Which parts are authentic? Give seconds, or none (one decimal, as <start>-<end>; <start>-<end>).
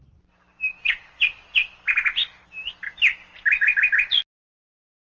0.0-5.1